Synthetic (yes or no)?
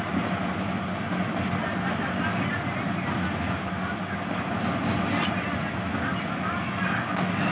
no